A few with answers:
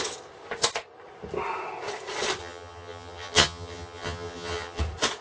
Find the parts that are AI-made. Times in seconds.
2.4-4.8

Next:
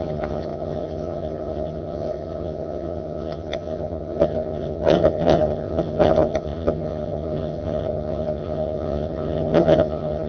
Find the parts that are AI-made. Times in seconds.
0.0-10.3

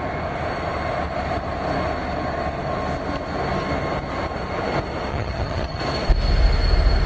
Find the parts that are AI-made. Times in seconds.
5.1-5.8

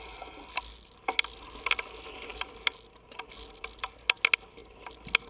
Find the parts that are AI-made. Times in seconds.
none

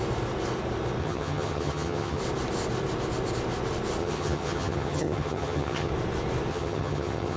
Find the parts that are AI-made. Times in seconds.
1.0-2.2; 4.0-5.9; 6.5-7.4

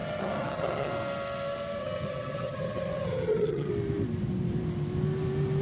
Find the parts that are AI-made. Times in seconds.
0.0-0.9; 1.8-3.7

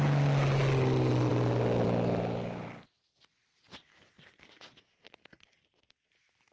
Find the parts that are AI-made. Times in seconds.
none